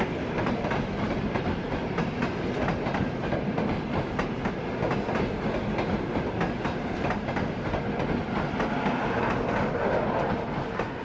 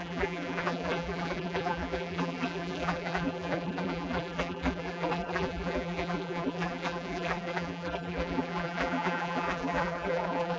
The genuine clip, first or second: first